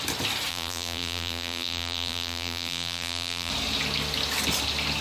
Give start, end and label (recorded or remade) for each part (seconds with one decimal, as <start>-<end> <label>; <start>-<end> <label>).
0.0-0.5 recorded; 0.5-3.5 remade; 3.5-5.0 recorded

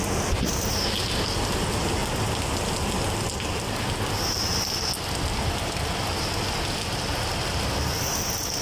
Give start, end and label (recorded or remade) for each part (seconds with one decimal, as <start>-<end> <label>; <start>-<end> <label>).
0.0-8.6 recorded

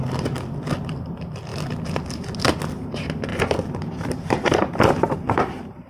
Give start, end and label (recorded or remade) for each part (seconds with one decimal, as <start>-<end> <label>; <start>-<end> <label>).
0.0-3.3 recorded; 3.3-5.9 remade

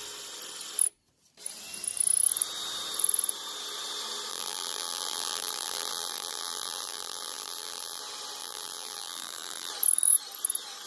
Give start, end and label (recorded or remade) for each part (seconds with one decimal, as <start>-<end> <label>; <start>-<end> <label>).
0.0-4.3 recorded; 4.3-8.0 remade; 8.0-8.4 recorded; 8.4-9.7 remade; 9.7-10.9 recorded

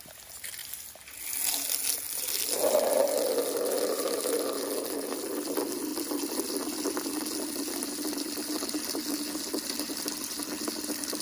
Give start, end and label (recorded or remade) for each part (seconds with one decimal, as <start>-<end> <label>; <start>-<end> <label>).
0.0-11.2 recorded

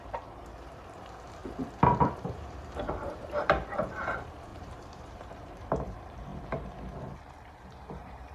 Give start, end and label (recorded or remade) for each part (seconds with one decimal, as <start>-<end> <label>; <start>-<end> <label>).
0.0-1.4 remade; 1.4-2.1 recorded; 2.1-6.3 remade; 6.3-7.5 recorded; 7.5-8.3 remade

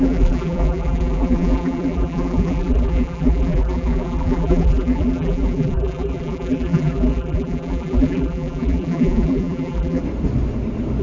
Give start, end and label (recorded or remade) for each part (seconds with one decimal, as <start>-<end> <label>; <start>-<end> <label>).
0.0-10.0 remade; 10.0-11.0 recorded